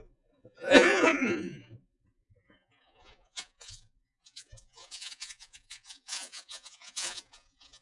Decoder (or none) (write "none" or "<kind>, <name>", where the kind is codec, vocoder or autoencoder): vocoder, Vocos